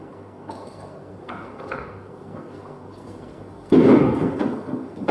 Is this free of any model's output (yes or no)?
no